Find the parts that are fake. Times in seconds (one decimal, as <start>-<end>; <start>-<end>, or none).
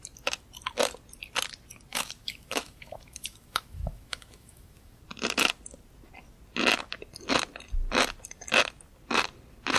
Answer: 1.9-5.0